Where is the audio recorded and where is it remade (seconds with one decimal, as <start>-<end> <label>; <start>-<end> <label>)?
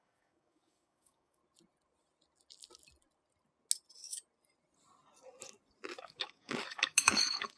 0.0-1.4 remade; 1.4-6.0 recorded; 6.0-7.6 remade